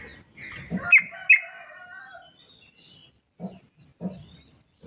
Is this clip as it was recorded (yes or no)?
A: yes